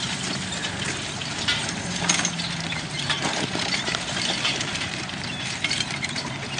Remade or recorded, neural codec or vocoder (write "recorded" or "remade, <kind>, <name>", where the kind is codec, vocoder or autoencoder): remade, vocoder, BigVGAN v2